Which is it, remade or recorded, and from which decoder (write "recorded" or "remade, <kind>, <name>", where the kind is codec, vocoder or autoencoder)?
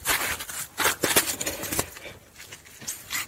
recorded